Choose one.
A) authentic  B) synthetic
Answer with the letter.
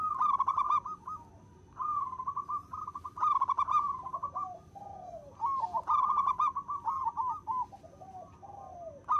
A